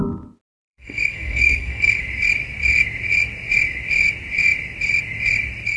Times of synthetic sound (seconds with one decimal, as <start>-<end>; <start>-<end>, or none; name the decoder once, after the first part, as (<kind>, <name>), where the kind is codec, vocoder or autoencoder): 0.6-2.0 (codec, SNAC)